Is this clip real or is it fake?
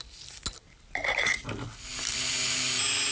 real